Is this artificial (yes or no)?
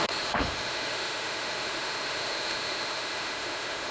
yes